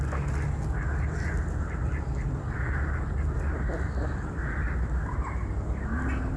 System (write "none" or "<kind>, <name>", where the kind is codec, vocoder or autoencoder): none